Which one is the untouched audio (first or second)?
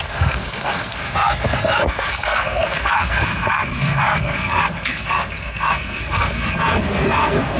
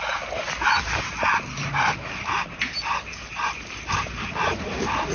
second